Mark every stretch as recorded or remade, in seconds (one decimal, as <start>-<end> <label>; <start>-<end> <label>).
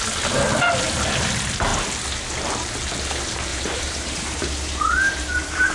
0.0-3.5 recorded; 3.5-5.7 remade